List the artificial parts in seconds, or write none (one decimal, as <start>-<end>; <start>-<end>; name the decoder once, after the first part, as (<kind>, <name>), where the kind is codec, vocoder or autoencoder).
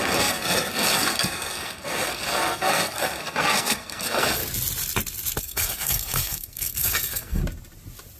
0.0-4.4 (codec, SNAC); 5.4-7.4